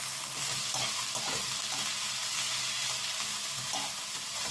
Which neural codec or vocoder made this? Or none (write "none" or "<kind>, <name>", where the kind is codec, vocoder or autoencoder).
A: none